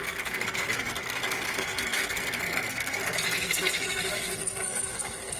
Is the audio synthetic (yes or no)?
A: yes